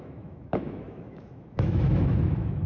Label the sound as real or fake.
fake